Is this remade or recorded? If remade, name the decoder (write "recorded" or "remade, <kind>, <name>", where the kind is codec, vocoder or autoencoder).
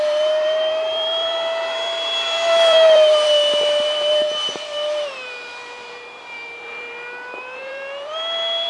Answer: remade, vocoder, BigVGAN v2